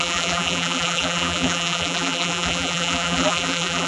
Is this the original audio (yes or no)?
no